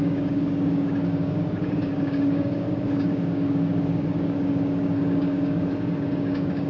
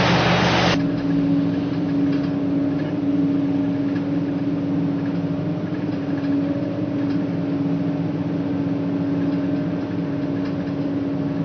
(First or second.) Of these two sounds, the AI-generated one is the first